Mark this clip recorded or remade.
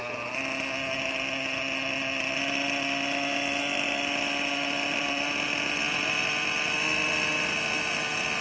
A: recorded